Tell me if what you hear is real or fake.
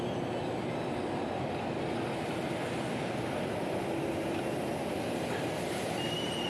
real